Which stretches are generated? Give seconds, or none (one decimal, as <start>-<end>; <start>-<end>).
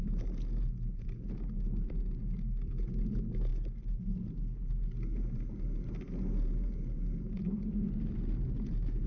none